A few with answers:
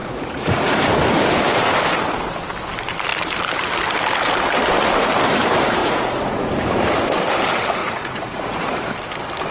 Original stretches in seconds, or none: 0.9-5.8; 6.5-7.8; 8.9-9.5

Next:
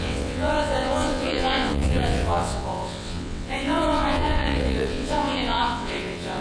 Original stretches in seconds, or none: none

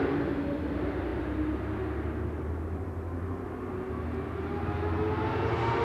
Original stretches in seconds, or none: 0.0-5.8